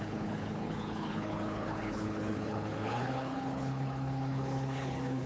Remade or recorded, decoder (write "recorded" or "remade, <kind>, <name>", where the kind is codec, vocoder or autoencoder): remade, codec, HILCodec